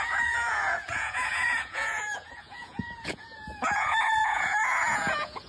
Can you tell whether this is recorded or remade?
remade